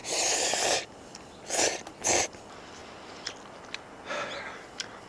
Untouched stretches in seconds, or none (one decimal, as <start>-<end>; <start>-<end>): 0.0-5.1